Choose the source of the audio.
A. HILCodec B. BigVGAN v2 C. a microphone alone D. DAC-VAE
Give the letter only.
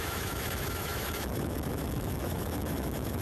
D